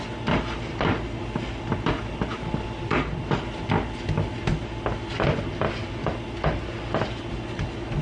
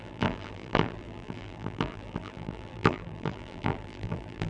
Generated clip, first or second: second